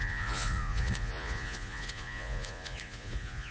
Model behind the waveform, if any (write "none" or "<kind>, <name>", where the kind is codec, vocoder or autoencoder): vocoder, Vocos